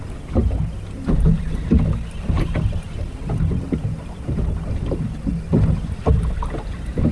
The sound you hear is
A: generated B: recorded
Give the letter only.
B